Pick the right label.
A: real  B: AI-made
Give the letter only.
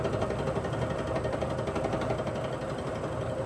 A